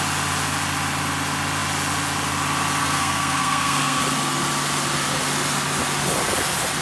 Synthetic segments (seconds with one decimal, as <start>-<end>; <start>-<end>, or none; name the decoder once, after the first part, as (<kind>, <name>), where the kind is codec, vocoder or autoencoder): 2.8-4.0 (codec, SNAC)